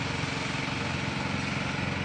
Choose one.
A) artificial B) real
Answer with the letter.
B